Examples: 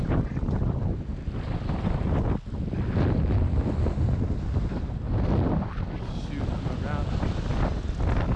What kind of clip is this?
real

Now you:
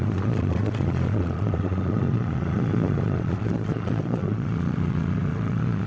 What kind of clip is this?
fake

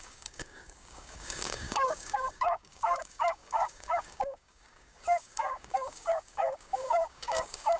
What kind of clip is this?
fake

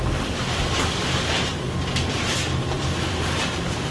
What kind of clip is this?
fake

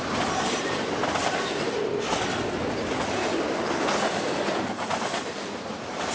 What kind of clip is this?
real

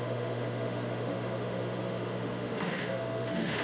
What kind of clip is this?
fake